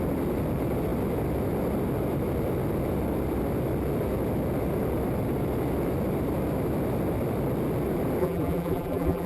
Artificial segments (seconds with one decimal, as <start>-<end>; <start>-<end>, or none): 8.2-9.3